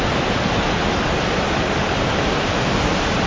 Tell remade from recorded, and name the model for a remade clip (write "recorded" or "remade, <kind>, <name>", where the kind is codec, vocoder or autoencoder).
recorded